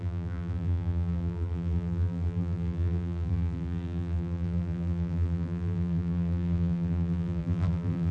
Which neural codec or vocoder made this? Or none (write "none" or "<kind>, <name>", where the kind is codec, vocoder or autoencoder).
vocoder, BigVGAN v2